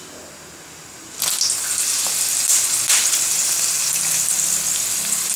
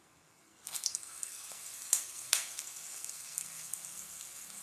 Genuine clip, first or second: first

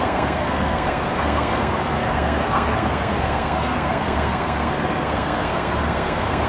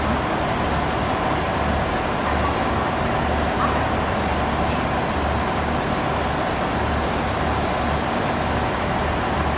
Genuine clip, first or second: second